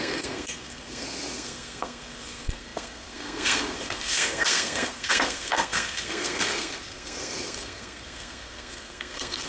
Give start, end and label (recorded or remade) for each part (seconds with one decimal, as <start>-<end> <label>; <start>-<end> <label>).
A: 0.0-9.5 remade